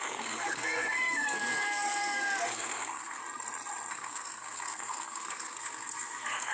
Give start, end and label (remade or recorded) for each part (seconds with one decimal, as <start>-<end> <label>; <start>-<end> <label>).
0.0-3.2 remade; 3.2-3.9 recorded; 3.9-6.5 remade